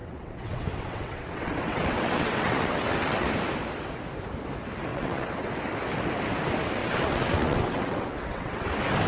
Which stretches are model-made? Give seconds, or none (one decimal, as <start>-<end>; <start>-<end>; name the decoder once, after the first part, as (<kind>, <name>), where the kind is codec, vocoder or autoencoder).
0.0-3.3 (vocoder, WaveNeXt); 4.9-5.5; 6.8-8.7